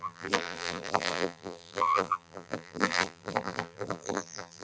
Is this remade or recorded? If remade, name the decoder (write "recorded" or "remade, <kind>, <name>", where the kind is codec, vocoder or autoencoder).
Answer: remade, vocoder, BigVGAN v2